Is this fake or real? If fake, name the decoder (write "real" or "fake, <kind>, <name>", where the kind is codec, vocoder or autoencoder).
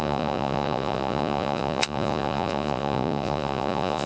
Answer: fake, vocoder, Vocos